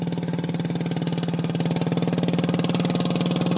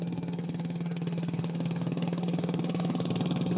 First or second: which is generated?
second